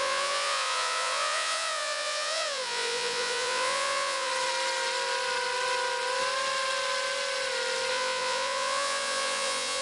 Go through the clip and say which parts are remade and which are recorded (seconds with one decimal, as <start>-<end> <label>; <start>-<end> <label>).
0.0-4.3 remade; 4.3-7.9 recorded; 7.9-9.8 remade